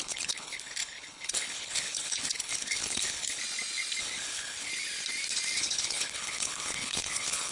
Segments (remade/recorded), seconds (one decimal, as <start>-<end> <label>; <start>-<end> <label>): 0.0-3.4 remade; 3.4-4.0 recorded; 4.0-4.7 remade; 4.7-5.6 recorded; 5.6-7.5 remade